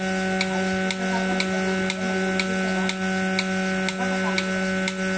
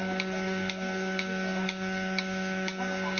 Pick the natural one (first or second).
first